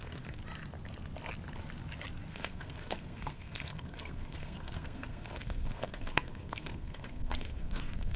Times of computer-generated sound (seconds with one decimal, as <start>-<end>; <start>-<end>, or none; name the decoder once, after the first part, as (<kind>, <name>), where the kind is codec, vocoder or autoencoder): 0.0-0.4 (codec, SNAC); 2.3-8.2